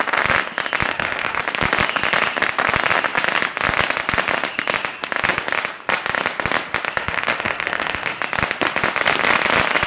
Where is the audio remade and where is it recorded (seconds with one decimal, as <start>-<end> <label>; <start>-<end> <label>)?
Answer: 0.0-0.9 recorded; 0.9-1.4 remade; 1.4-7.0 recorded; 7.0-8.2 remade; 8.2-9.9 recorded